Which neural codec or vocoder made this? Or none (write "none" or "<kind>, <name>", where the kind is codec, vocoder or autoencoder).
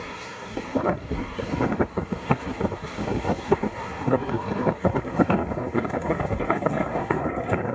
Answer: codec, SNAC